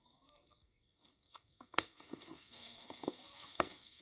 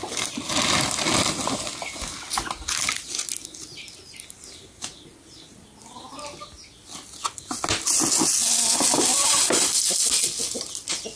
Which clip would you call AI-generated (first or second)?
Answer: first